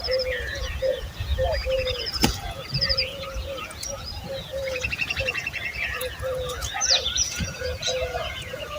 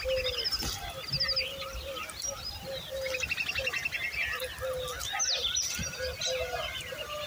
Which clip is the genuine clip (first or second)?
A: second